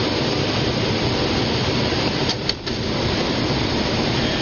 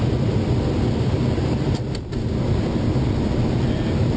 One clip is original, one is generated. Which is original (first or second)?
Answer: second